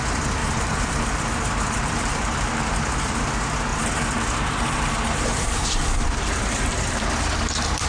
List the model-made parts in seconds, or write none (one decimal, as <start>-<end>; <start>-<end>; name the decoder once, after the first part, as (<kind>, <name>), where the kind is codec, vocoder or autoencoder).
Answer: 0.4-2.8 (vocoder, BigVGAN v2); 3.7-7.0